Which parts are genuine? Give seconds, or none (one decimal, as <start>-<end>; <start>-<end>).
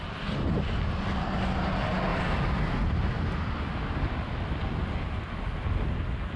0.0-2.1; 5.9-6.4